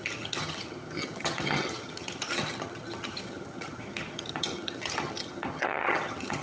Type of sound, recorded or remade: remade